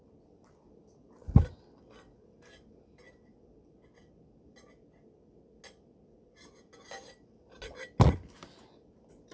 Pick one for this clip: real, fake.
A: real